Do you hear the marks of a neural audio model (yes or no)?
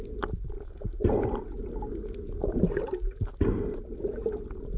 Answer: no